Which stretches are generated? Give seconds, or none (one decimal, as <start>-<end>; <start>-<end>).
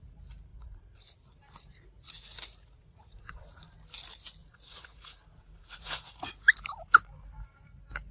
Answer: 0.5-1.0; 2.8-3.7; 4.4-6.3